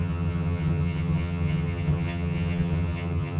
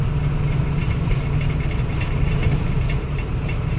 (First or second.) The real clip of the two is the second